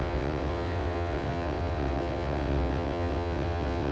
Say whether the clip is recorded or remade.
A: remade